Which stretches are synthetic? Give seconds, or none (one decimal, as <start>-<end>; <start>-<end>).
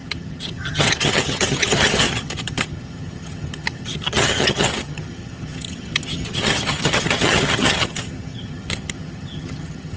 0.0-10.0